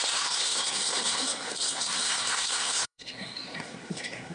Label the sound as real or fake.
fake